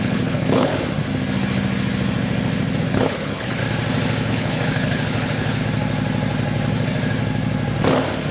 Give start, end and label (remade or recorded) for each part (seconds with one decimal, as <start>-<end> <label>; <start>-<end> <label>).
0.0-0.7 remade; 0.7-2.8 recorded; 2.8-3.6 remade; 3.6-4.3 recorded; 4.3-5.6 remade; 5.6-8.3 recorded